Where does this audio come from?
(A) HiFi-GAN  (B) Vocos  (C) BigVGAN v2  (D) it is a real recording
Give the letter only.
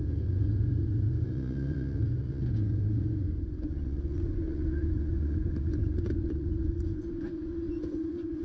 B